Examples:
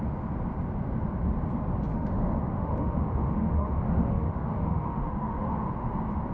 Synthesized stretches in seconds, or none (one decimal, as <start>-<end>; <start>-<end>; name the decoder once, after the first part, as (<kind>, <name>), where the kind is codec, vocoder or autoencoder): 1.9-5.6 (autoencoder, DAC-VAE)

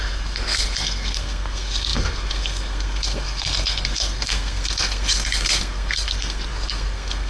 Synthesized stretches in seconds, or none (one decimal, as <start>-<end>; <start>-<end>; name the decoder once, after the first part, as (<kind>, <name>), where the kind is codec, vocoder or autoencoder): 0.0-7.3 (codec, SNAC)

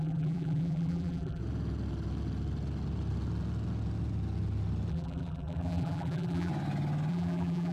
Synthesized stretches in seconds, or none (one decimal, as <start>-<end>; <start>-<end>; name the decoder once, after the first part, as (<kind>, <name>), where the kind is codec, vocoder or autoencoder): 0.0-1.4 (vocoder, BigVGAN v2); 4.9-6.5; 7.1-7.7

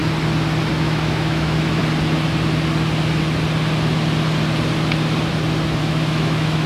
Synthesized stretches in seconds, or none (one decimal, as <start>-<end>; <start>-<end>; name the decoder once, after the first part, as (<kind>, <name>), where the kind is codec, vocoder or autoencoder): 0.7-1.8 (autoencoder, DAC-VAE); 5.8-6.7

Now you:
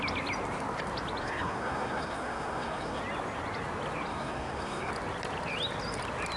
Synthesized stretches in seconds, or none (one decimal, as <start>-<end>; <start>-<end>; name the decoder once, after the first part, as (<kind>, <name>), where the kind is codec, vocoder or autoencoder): 1.2-3.0 (codec, SNAC); 4.1-4.9

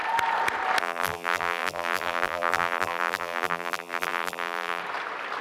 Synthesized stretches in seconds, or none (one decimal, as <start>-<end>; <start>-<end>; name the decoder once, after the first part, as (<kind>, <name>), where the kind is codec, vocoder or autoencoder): 0.8-4.8 (vocoder, BigVGAN v2)